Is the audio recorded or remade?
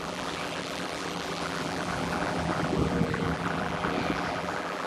remade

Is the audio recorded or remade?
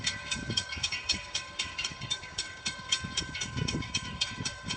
remade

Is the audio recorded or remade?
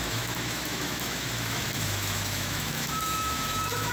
remade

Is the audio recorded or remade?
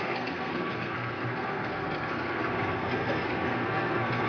remade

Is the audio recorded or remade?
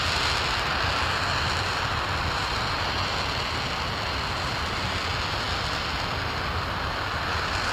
recorded